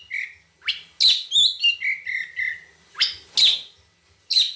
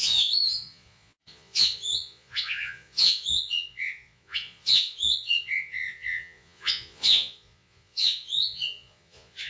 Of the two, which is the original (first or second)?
first